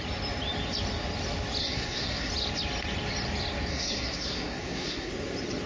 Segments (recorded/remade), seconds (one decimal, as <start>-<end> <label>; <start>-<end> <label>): 0.0-1.6 recorded; 1.6-2.3 remade; 2.3-3.7 recorded; 3.7-5.1 remade; 5.1-5.7 recorded